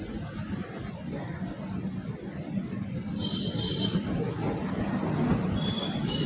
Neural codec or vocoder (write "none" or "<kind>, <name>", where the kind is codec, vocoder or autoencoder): none